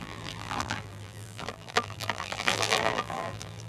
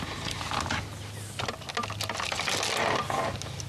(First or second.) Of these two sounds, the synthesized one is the first